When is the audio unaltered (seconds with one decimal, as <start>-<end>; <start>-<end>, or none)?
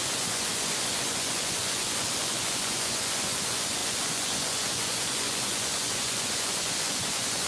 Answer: none